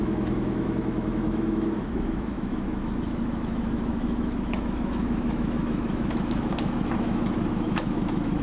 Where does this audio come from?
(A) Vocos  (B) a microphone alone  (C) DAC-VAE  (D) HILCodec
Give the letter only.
C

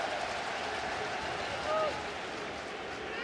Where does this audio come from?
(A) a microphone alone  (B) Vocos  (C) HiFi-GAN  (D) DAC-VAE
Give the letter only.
A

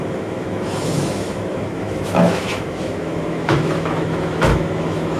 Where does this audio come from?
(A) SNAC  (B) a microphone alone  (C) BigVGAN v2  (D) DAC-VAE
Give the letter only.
D